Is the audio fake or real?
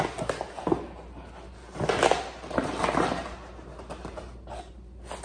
real